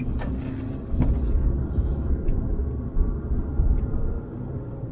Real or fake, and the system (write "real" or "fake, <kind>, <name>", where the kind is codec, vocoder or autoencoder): real